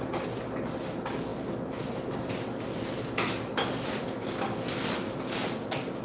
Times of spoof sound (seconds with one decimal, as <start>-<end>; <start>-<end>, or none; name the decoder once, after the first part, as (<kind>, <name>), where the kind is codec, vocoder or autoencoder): none